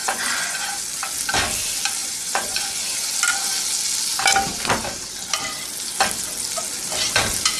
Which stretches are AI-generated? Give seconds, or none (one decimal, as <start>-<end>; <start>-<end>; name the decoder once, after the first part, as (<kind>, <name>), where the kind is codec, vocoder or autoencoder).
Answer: 0.0-0.8 (vocoder, Vocos); 2.0-3.1